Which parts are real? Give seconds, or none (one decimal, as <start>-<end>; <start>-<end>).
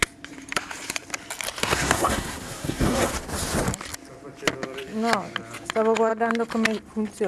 0.0-1.6; 3.1-7.3